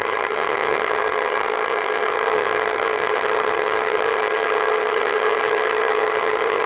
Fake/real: fake